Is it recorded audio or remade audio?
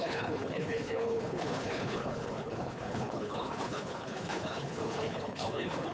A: remade